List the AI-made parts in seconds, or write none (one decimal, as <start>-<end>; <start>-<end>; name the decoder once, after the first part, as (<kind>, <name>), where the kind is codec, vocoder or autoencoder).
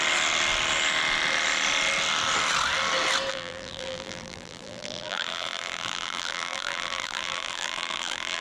3.3-8.4 (vocoder, BigVGAN v2)